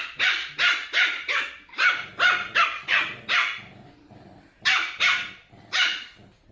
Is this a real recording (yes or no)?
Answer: no